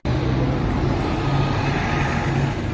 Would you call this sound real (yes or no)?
yes